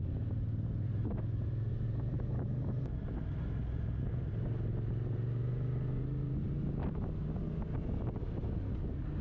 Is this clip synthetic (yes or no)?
no